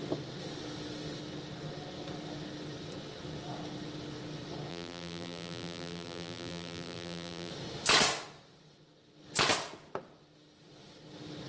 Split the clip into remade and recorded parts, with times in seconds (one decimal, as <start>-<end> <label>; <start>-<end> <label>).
0.0-4.7 recorded; 4.7-7.5 remade; 7.5-11.5 recorded